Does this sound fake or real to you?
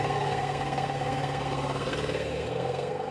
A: fake